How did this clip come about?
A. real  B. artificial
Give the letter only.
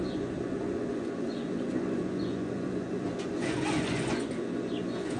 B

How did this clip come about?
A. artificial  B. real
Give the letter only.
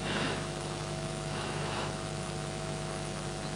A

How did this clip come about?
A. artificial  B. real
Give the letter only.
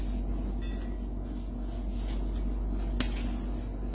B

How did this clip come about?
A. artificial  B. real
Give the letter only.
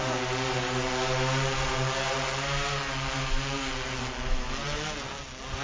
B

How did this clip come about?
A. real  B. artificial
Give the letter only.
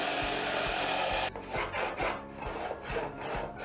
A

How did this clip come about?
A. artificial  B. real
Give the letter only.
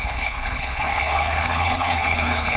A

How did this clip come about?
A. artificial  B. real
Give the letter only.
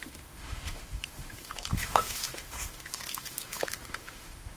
A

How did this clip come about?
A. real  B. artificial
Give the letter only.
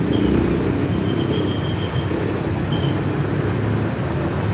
A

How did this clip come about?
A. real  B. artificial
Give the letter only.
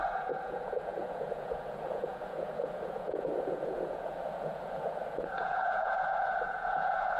B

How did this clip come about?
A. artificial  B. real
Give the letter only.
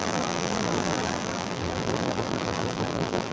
A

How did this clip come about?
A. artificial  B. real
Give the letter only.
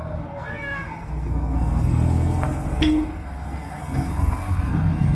A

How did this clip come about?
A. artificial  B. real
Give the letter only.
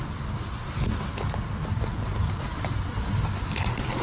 B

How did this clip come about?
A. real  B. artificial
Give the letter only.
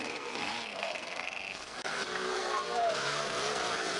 B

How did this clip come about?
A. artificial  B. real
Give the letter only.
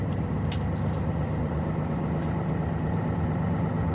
B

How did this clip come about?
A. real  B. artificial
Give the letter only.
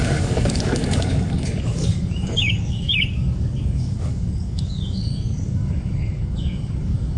B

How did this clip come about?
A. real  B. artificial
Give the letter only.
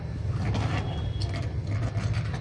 A